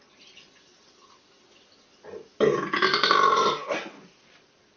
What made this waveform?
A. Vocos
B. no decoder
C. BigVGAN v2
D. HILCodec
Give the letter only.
B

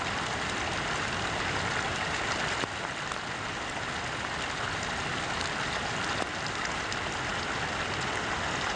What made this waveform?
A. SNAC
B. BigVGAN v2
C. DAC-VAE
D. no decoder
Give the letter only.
D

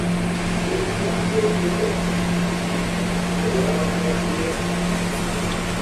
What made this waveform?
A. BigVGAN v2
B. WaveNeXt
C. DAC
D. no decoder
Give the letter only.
D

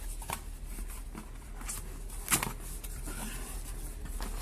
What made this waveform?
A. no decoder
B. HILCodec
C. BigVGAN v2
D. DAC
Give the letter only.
A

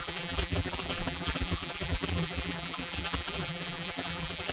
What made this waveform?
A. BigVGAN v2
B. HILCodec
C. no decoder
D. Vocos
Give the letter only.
A